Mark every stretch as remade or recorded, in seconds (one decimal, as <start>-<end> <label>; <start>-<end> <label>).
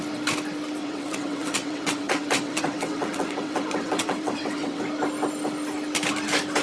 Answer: 0.0-0.8 recorded; 0.8-4.8 remade; 4.8-6.6 recorded